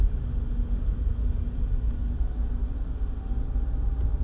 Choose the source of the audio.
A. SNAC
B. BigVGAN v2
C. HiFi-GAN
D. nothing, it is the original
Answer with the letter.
D